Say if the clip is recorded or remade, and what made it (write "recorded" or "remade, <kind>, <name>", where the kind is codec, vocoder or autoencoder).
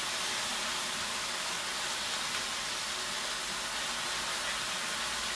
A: recorded